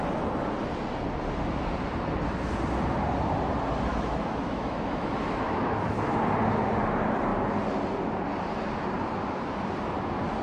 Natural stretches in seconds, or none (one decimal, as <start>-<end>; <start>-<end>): 0.0-3.9; 6.1-10.4